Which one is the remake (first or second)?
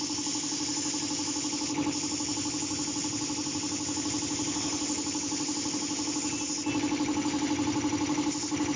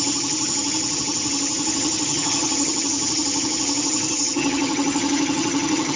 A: second